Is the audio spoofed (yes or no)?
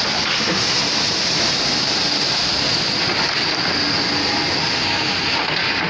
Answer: no